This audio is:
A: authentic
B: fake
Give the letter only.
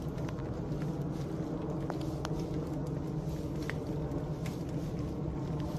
A